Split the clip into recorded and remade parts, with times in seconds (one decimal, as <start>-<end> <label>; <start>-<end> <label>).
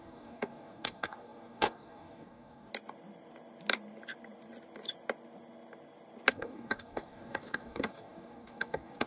0.0-2.7 remade; 2.7-6.3 recorded; 6.3-9.1 remade